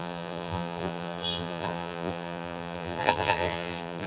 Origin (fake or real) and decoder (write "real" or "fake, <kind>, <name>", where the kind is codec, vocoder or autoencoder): fake, vocoder, BigVGAN v2